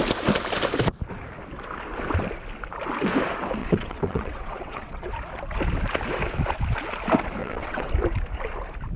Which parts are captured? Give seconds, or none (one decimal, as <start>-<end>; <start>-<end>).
0.0-3.6; 5.1-7.4; 7.9-9.0